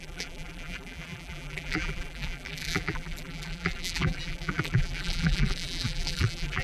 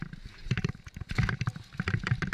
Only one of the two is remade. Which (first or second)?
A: first